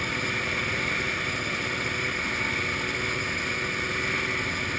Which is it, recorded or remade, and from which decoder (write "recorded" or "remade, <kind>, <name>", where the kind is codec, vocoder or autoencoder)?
recorded